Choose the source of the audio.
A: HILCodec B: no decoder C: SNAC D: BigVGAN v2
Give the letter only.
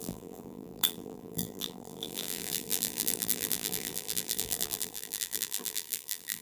D